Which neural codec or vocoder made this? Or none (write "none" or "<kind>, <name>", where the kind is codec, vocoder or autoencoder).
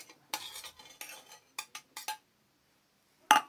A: none